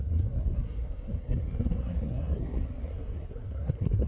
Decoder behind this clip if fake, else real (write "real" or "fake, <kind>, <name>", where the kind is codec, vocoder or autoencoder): fake, codec, SNAC